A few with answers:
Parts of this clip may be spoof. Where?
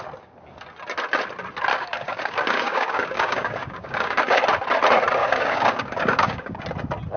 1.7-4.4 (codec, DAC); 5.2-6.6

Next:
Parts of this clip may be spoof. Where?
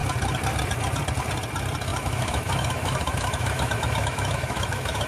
1.9-5.1 (autoencoder, DAC-VAE)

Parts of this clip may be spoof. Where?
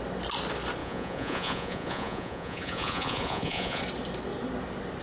0.8-3.8 (vocoder, Vocos)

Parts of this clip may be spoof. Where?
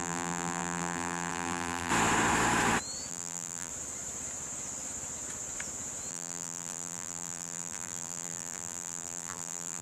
0.0-1.9 (vocoder, BigVGAN v2); 3.1-3.7; 6.1-9.8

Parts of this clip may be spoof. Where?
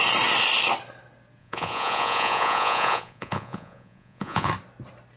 1.4-4.5 (vocoder, Vocos)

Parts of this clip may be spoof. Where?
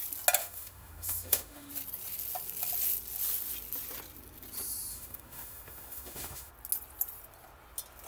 0.4-1.7 (autoencoder, DAC-VAE); 4.9-6.5